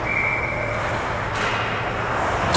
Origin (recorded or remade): recorded